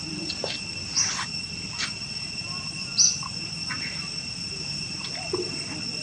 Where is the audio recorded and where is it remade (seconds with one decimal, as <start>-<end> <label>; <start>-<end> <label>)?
0.0-6.0 recorded

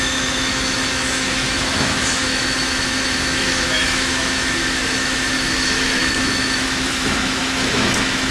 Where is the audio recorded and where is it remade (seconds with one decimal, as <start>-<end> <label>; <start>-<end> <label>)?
0.0-8.3 remade

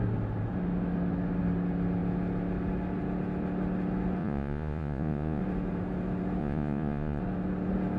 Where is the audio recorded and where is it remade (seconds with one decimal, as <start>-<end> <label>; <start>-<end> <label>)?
0.0-4.2 recorded; 4.2-5.4 remade; 5.4-6.4 recorded; 6.4-7.2 remade; 7.2-8.0 recorded

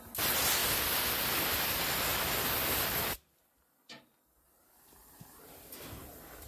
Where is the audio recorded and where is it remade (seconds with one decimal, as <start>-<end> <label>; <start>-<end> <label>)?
0.0-6.5 recorded

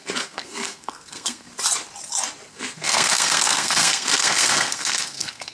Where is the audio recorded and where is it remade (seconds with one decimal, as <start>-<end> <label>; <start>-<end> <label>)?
0.0-1.5 remade; 1.5-2.5 recorded; 2.5-5.5 remade